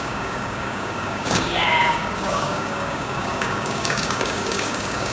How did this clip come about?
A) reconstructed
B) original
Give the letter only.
A